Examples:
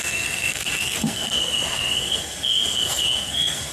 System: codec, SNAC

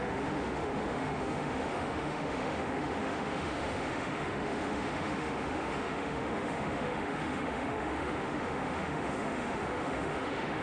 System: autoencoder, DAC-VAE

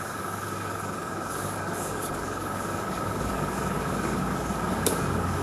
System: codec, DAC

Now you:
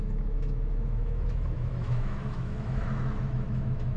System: autoencoder, DAC-VAE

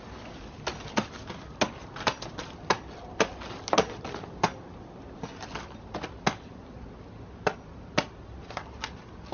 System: none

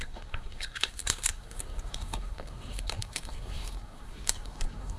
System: codec, SNAC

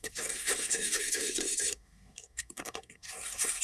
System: codec, SNAC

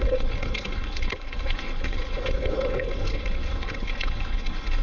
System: codec, HILCodec